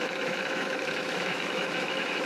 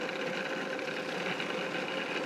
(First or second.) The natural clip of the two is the second